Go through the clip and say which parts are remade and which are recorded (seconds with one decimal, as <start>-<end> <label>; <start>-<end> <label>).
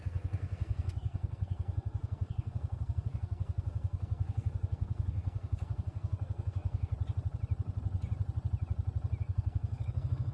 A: 0.0-6.9 remade; 6.9-9.2 recorded; 9.2-10.3 remade